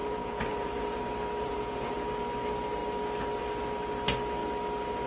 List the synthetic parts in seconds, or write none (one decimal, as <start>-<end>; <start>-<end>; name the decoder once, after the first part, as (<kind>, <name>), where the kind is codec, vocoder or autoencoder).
0.0-1.0 (vocoder, Vocos); 1.4-2.0